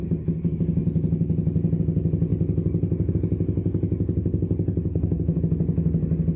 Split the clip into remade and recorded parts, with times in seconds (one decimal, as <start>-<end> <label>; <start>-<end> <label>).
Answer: 0.0-4.9 recorded; 4.9-5.4 remade; 5.4-6.4 recorded